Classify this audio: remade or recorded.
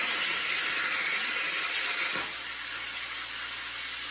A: recorded